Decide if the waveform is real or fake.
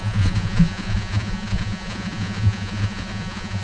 fake